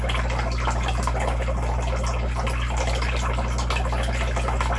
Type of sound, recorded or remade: recorded